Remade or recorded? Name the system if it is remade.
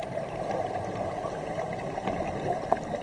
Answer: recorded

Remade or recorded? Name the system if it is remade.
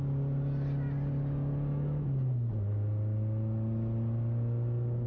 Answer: recorded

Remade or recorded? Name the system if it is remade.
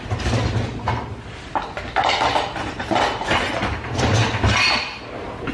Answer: recorded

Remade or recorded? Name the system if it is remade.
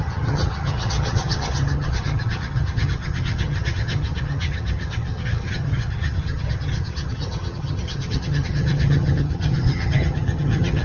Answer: remade, vocoder, HiFi-GAN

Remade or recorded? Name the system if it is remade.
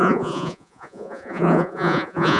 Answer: remade, vocoder, Vocos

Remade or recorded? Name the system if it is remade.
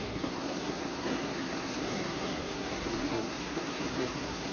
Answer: remade, codec, SNAC